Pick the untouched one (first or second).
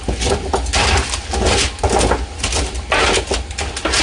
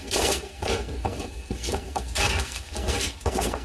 first